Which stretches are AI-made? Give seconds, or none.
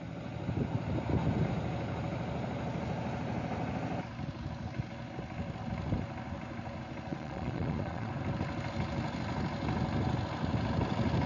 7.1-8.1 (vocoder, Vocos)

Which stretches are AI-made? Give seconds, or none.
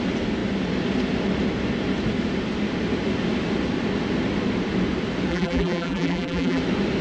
5.3-6.6 (vocoder, BigVGAN v2)